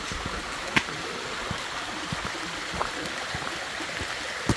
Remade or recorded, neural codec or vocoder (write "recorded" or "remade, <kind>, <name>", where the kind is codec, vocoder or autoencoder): recorded